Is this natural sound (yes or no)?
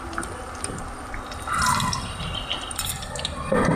no